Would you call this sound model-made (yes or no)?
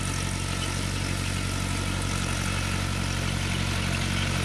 no